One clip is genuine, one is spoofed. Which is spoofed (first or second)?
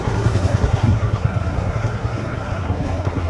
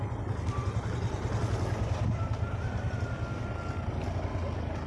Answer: first